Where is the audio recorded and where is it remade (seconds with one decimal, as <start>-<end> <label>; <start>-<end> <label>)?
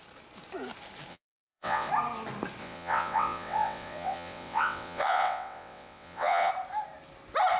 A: 0.0-1.1 recorded; 1.1-1.9 remade; 1.9-2.6 recorded; 2.6-6.5 remade; 6.5-7.6 recorded